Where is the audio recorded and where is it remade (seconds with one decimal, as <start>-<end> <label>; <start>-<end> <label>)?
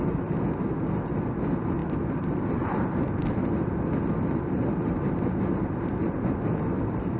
0.0-7.2 recorded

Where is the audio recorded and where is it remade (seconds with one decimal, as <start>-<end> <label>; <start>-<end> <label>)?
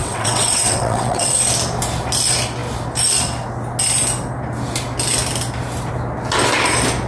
0.0-1.3 remade; 1.3-7.1 recorded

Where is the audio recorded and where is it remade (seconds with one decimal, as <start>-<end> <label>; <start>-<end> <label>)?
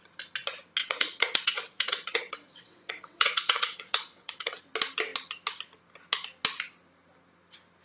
0.0-0.8 recorded; 0.8-4.6 remade; 4.6-7.8 recorded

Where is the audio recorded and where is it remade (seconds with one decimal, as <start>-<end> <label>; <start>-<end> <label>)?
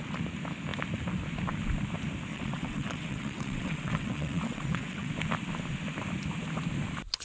0.0-2.3 recorded; 2.3-5.1 remade; 5.1-7.2 recorded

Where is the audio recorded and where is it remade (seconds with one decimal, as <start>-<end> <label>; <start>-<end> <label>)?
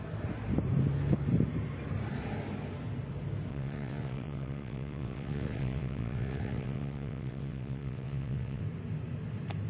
0.0-3.5 recorded; 3.5-8.6 remade; 8.6-9.7 recorded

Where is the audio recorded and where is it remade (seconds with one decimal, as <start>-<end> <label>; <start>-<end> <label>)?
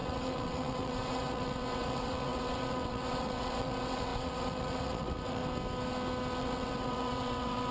0.0-5.4 remade; 5.4-6.4 recorded; 6.4-7.7 remade